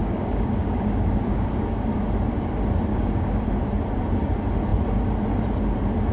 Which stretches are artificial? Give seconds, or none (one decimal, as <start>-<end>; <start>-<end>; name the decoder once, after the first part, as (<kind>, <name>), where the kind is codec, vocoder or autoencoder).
0.0-2.0 (codec, DAC); 2.9-3.4